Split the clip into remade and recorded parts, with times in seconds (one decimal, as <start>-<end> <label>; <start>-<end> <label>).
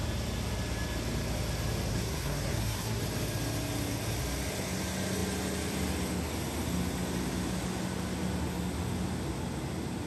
0.0-1.9 recorded; 1.9-3.0 remade; 3.0-10.1 recorded